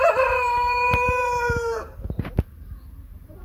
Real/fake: fake